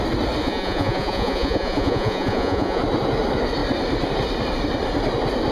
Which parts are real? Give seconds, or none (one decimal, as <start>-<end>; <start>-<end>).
0.0-0.4; 2.8-5.5

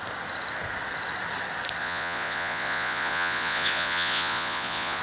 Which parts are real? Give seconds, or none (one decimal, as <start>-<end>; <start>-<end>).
0.0-1.8

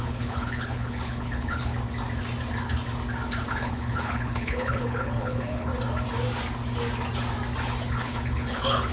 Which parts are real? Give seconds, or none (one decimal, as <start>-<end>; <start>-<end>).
1.7-3.5; 5.7-7.9

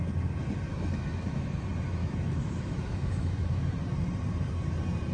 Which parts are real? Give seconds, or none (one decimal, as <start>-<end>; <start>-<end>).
0.0-0.7; 1.5-2.0; 3.7-5.1

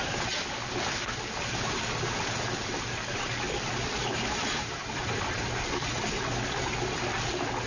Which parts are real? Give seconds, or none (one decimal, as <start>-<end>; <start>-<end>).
0.0-4.1; 5.7-7.7